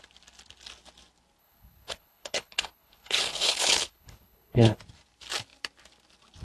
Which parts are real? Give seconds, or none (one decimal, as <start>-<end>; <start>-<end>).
0.0-1.4; 4.8-6.4